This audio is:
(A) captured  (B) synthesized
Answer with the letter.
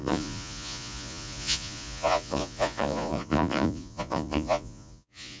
B